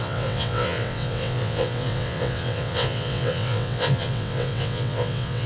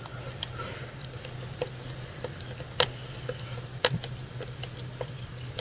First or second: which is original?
second